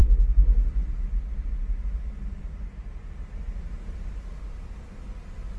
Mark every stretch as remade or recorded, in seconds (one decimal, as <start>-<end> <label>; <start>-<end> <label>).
0.0-5.6 recorded